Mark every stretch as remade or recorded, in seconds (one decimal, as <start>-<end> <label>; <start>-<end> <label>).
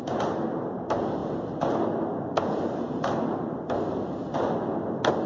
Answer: 0.0-5.3 recorded